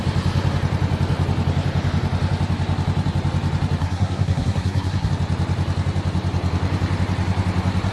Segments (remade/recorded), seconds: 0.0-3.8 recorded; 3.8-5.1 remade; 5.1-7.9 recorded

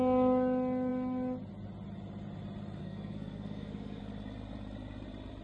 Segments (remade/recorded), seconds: 0.0-2.8 recorded; 2.8-4.0 remade; 4.0-5.4 recorded

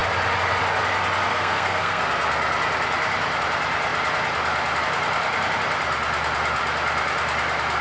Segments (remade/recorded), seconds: 0.0-1.3 recorded; 1.3-2.0 remade; 2.0-7.8 recorded

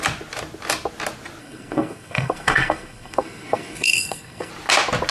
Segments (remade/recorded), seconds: 0.0-1.4 recorded; 1.4-4.5 remade; 4.5-5.1 recorded